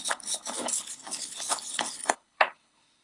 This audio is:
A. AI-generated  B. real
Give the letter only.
A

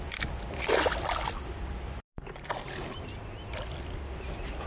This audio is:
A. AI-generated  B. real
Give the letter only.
B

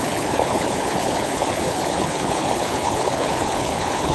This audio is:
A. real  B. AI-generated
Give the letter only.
B